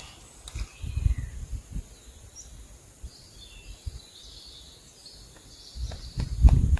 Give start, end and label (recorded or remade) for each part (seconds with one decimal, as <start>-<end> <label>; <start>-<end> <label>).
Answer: 0.0-6.8 recorded